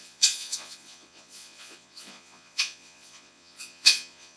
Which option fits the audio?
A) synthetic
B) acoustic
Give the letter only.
A